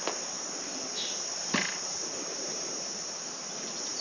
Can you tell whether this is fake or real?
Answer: real